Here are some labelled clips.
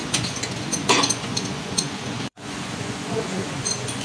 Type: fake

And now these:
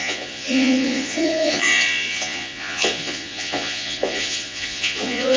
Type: fake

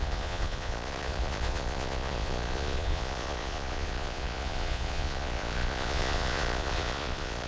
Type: fake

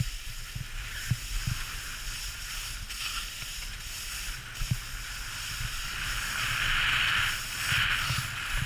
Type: real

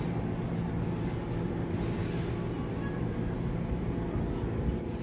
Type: real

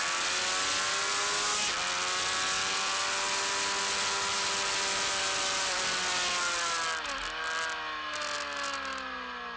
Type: real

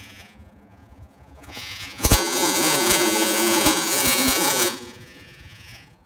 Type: fake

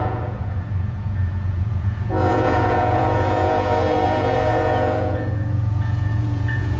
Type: fake